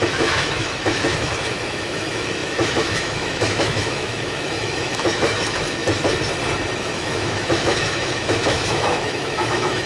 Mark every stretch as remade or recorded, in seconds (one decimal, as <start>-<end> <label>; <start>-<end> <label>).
0.0-5.8 remade; 5.8-6.8 recorded; 6.8-9.9 remade